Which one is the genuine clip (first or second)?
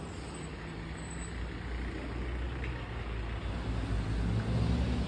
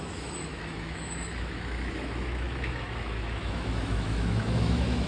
first